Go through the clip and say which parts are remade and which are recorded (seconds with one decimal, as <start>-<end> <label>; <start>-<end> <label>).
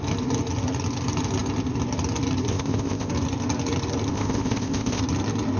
0.0-2.5 recorded; 2.5-3.1 remade; 3.1-4.1 recorded; 4.1-5.0 remade; 5.0-5.6 recorded